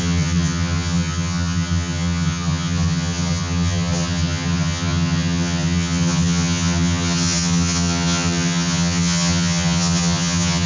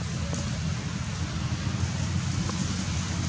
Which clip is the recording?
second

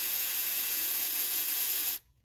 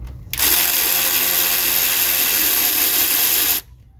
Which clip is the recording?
second